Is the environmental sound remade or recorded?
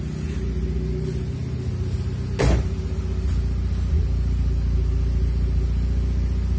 recorded